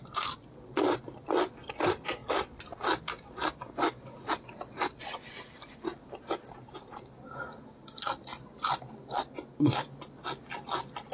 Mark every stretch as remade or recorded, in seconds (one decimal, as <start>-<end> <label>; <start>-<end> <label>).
0.0-11.1 recorded